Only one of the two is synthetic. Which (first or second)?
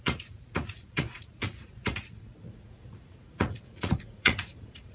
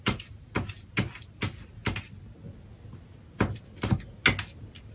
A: first